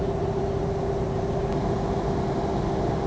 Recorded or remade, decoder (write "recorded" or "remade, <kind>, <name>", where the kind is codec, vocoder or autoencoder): recorded